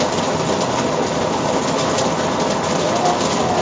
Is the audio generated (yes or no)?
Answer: no